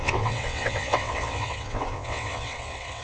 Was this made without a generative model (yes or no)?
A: no